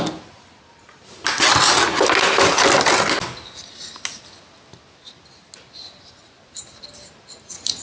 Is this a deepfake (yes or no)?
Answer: no